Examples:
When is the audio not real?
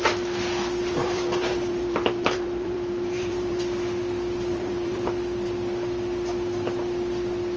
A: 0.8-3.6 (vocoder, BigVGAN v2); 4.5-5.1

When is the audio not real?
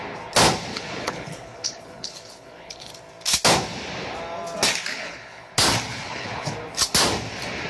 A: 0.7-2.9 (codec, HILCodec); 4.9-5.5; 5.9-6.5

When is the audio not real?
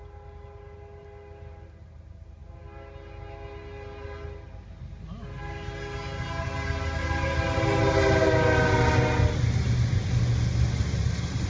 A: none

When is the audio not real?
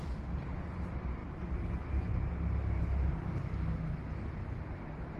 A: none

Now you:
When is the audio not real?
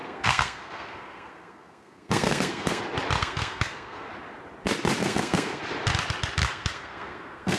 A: 0.0-2.8 (codec, SNAC); 3.2-4.1; 5.0-5.6; 6.4-7.6